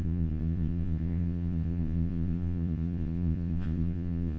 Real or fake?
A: fake